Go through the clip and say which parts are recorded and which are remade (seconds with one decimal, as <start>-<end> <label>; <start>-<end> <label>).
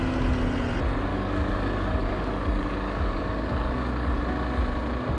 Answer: 0.0-1.1 recorded; 1.1-4.2 remade; 4.2-5.2 recorded